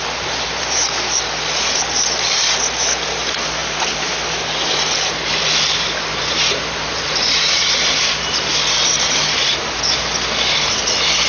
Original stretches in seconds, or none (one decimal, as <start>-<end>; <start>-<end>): none